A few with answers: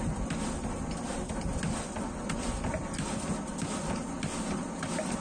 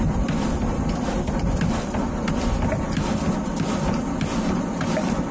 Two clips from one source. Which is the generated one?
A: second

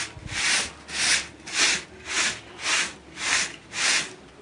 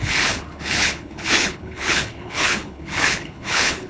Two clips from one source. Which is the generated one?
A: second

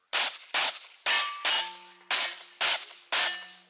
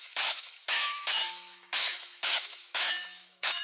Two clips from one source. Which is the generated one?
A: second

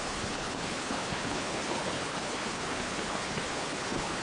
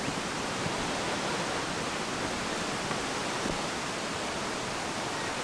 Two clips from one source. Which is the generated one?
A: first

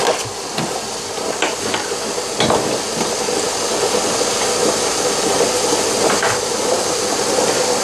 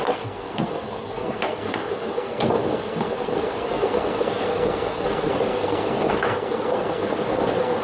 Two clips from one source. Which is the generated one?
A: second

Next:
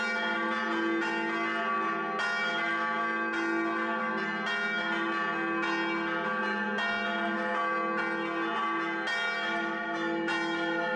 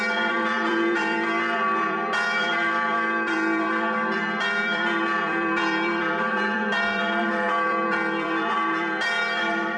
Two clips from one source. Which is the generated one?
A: second